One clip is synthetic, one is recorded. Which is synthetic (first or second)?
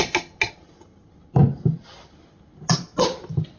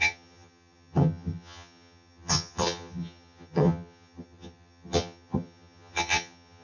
second